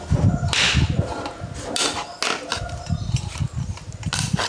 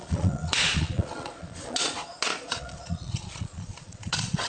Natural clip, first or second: first